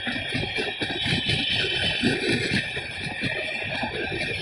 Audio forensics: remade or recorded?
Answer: recorded